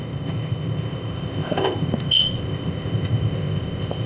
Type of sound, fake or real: fake